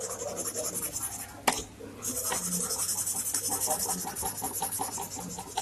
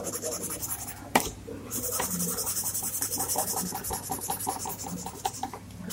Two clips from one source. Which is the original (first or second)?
first